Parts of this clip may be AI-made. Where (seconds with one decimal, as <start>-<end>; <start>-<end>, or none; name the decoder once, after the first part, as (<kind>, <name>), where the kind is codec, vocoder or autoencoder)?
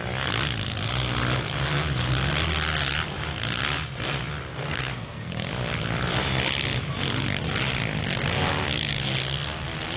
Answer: 4.5-5.3 (codec, SNAC)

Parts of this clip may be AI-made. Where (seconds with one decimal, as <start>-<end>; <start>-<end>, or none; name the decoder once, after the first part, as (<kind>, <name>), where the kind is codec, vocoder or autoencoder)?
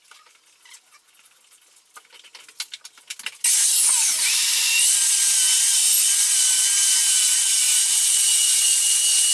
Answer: none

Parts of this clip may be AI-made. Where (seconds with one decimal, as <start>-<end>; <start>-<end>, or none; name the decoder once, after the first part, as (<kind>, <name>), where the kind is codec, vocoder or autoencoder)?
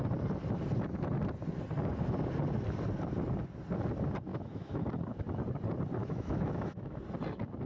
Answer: 4.3-4.9 (autoencoder, DAC-VAE); 6.0-7.0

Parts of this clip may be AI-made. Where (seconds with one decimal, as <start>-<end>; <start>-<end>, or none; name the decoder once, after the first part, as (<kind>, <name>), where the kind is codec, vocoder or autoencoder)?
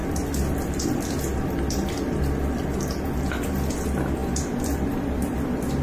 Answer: 0.0-2.2 (vocoder, BigVGAN v2); 4.2-5.8